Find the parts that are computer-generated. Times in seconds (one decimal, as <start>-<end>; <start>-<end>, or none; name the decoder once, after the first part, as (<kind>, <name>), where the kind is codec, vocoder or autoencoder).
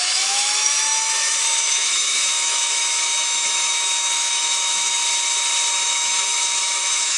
0.0-5.0 (autoencoder, DAC-VAE); 5.7-7.2